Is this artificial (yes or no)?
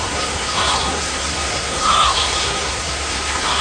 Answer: yes